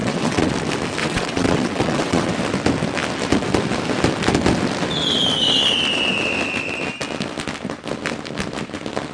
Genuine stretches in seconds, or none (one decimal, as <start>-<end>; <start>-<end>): 0.5-1.0; 2.3-9.1